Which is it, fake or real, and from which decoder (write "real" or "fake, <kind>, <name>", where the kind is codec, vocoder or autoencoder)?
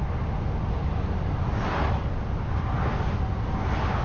real